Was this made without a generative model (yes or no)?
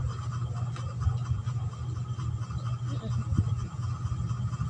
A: yes